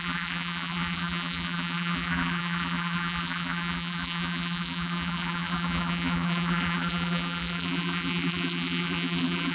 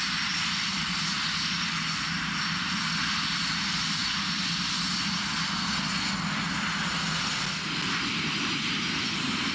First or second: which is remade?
first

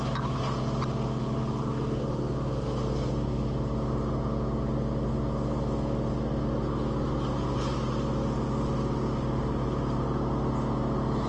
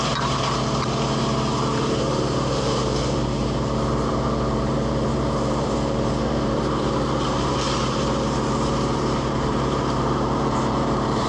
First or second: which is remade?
second